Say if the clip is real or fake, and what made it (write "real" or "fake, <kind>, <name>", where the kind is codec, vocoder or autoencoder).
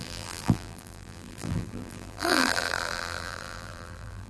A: fake, vocoder, BigVGAN v2